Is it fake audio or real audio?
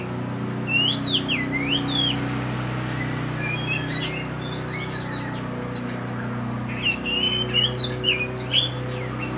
real